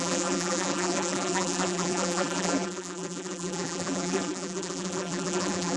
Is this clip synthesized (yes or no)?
yes